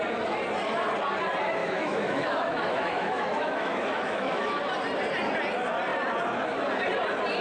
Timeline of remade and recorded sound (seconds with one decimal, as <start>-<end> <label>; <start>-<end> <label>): 0.0-1.6 recorded; 1.6-4.6 remade; 4.6-7.4 recorded